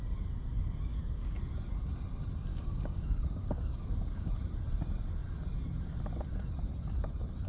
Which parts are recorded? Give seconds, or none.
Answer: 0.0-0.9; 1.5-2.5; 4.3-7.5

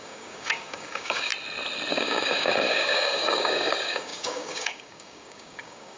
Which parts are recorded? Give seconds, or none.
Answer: 1.3-1.9

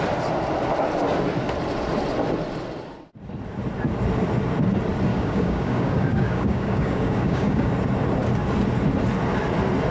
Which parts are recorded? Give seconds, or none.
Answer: 0.0-5.1; 7.7-9.9

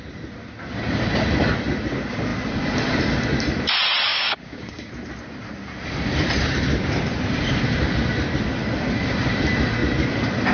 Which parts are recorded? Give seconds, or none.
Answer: 0.0-4.1; 4.9-10.5